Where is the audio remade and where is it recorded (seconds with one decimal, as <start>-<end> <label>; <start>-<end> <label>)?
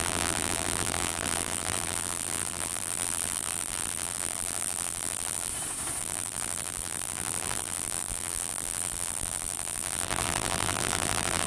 0.0-5.5 remade; 5.5-6.0 recorded; 6.0-11.5 remade